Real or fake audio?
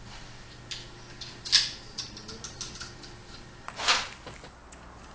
real